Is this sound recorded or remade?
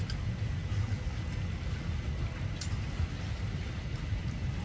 recorded